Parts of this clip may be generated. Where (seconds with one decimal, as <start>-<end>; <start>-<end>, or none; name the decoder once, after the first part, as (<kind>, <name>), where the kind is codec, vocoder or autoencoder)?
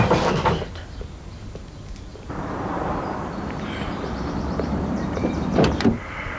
2.1-5.9 (vocoder, BigVGAN v2)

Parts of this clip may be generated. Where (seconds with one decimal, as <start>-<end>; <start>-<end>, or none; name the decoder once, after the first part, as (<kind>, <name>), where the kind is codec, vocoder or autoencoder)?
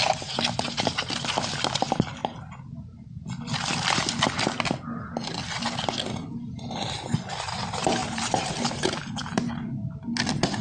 8.0-9.5 (vocoder, BigVGAN v2)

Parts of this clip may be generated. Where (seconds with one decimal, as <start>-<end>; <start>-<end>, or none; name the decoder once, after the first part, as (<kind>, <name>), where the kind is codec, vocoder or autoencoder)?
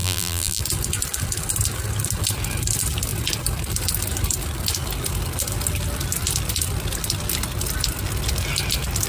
0.0-0.6 (vocoder, BigVGAN v2)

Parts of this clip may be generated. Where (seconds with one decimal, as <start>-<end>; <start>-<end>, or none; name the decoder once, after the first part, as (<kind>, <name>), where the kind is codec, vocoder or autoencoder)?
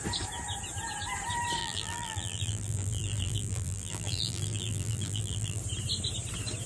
1.6-5.6 (vocoder, BigVGAN v2)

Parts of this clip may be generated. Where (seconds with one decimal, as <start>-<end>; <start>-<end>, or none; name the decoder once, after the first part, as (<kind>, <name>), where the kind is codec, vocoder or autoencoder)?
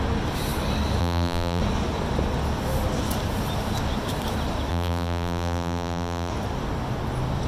1.0-1.6 (vocoder, BigVGAN v2); 4.7-6.3